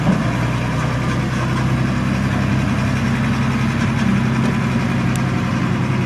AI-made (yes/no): no